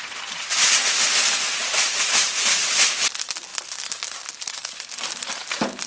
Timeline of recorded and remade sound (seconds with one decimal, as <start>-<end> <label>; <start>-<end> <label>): 0.0-5.9 recorded